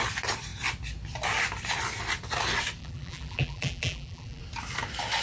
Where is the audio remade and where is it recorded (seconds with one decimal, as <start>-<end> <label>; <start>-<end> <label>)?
0.0-2.8 recorded; 2.8-4.4 remade; 4.4-5.2 recorded

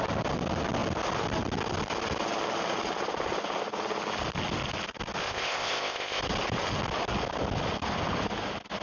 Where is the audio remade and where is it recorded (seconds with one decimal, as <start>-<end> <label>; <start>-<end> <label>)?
0.0-5.2 recorded; 5.2-6.2 remade; 6.2-8.8 recorded

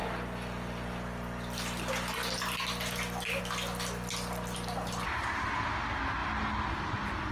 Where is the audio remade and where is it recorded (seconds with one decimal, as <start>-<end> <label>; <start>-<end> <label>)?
0.0-7.3 recorded

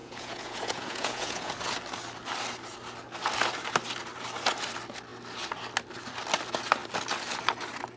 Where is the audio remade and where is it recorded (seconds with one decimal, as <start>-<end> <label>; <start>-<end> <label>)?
0.0-1.5 remade; 1.5-8.0 recorded

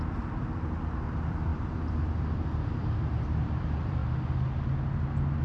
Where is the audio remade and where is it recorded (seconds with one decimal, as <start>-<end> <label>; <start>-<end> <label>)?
0.0-4.0 remade; 4.0-5.4 recorded

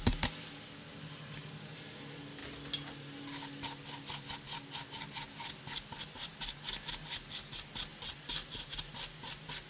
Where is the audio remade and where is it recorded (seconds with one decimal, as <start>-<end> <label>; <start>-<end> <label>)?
0.0-9.7 recorded